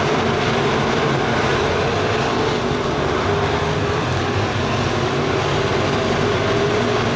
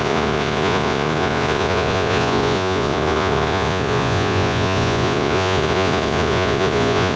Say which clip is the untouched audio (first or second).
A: first